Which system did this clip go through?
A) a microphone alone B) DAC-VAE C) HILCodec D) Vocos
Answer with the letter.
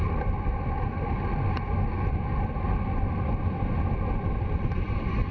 A